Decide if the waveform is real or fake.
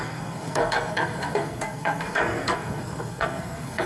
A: fake